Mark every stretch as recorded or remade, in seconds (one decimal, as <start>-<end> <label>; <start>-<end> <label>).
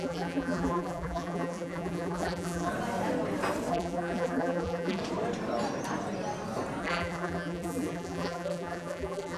0.0-2.7 remade; 2.7-3.7 recorded; 3.7-5.0 remade; 5.0-6.8 recorded; 6.8-9.4 remade